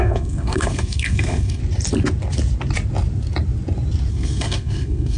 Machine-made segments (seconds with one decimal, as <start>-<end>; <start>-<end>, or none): 0.0-1.6; 4.1-5.2